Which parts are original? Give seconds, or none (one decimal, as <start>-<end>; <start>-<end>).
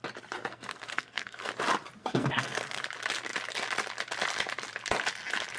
0.0-0.5; 1.5-2.0; 2.8-5.6